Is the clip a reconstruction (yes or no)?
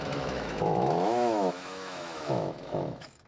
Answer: yes